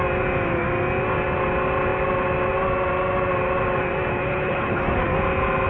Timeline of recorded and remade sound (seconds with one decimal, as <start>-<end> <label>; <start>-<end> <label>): 0.0-4.1 recorded; 4.1-4.8 remade; 4.8-5.7 recorded